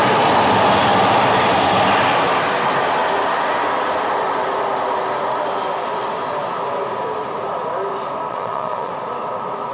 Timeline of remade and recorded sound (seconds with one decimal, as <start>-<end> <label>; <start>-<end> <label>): 0.0-8.3 recorded; 8.3-8.9 remade; 8.9-9.7 recorded